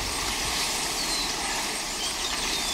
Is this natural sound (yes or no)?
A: no